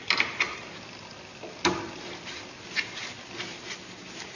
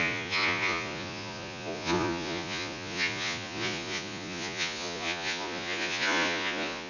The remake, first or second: second